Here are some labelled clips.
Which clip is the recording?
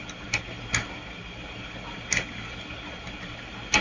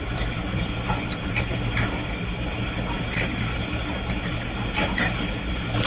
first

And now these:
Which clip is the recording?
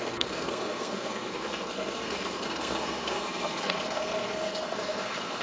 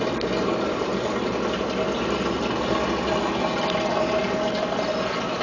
second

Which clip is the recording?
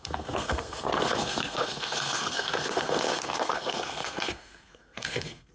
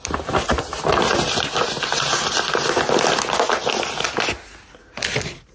second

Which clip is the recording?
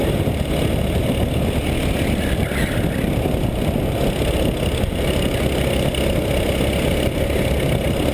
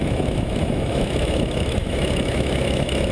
first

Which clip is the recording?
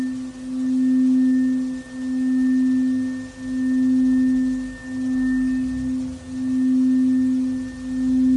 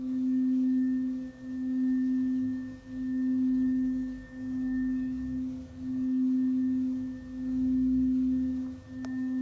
first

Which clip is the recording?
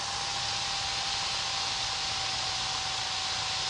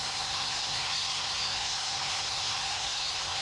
first